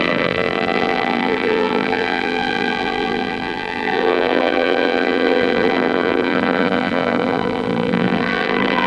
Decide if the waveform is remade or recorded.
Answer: remade